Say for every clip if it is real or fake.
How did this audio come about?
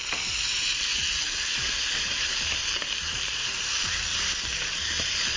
fake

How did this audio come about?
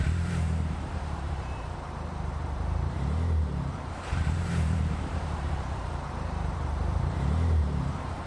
fake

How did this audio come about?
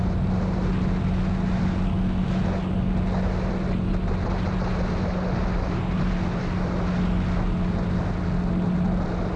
real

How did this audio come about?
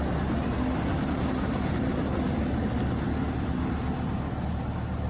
real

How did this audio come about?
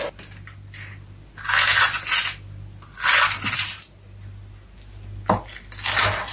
real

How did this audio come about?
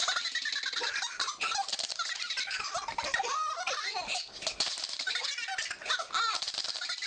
real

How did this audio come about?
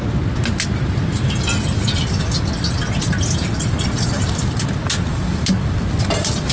real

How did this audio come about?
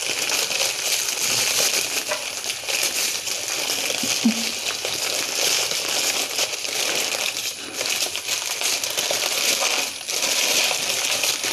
real